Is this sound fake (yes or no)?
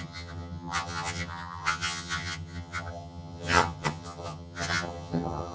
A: yes